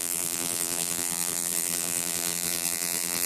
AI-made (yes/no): yes